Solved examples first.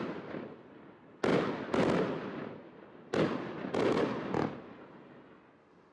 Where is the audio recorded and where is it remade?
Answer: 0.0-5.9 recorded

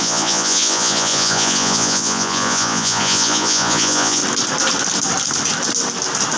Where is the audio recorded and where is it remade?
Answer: 0.0-4.2 remade; 4.2-6.4 recorded

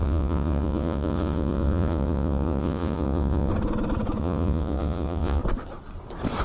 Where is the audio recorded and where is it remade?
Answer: 0.0-3.5 remade; 3.5-4.2 recorded; 4.2-5.4 remade; 5.4-6.4 recorded

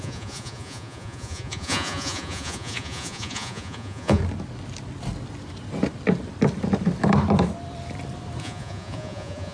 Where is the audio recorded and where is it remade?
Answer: 0.0-4.2 remade; 4.2-8.4 recorded; 8.4-9.5 remade

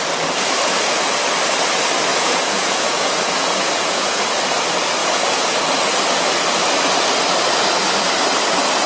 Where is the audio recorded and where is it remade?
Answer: 0.0-2.1 recorded; 2.1-4.2 remade; 4.2-5.0 recorded; 5.0-5.6 remade; 5.6-8.9 recorded

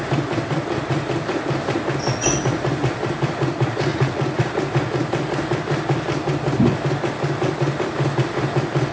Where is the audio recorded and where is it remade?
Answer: 0.0-3.9 recorded; 3.9-4.6 remade; 4.6-8.9 recorded

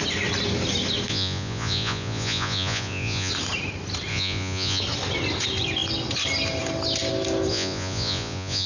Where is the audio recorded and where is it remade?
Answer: 0.0-1.1 recorded; 1.1-3.3 remade; 3.3-4.1 recorded; 4.1-4.8 remade; 4.8-7.5 recorded; 7.5-8.7 remade